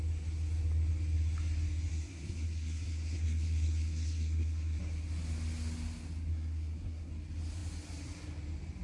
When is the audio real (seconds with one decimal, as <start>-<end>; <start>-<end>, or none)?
0.0-1.9; 4.8-6.3; 7.1-8.8